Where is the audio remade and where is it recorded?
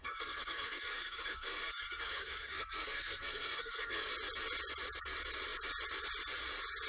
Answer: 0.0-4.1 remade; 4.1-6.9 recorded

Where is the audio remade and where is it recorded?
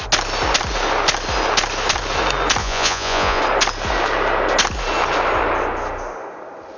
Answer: 0.0-2.6 recorded; 2.6-3.4 remade; 3.4-6.8 recorded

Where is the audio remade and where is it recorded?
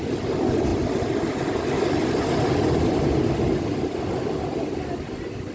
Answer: 0.0-5.5 recorded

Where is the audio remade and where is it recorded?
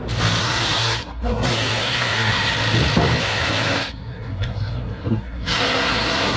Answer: 0.0-0.4 recorded; 0.4-2.5 remade; 2.5-3.2 recorded; 3.2-6.4 remade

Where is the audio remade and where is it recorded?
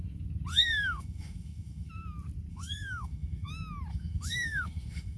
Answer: 0.0-0.5 recorded; 0.5-1.9 remade; 1.9-2.5 recorded; 2.5-3.5 remade; 3.5-3.9 recorded; 3.9-5.2 remade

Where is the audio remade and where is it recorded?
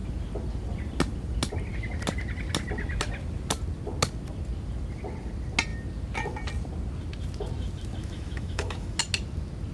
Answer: 0.0-8.0 recorded; 8.0-9.0 remade; 9.0-9.7 recorded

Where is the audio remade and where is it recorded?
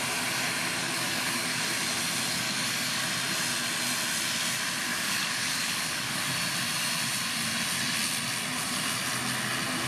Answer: 0.0-0.8 recorded; 0.8-1.6 remade; 1.6-2.3 recorded; 2.3-3.0 remade; 3.0-4.9 recorded; 4.9-6.2 remade; 6.2-9.9 recorded